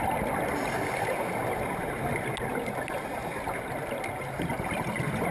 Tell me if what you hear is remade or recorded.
recorded